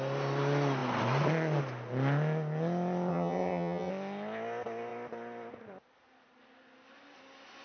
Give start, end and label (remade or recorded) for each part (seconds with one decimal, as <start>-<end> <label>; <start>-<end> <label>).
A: 0.0-3.1 recorded; 3.1-3.9 remade; 3.9-7.6 recorded